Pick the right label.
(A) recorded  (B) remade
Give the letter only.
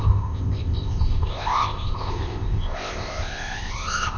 B